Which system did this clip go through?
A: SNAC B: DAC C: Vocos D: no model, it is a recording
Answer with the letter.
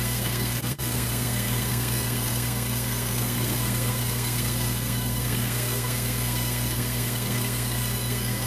A